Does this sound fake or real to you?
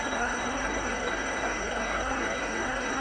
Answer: fake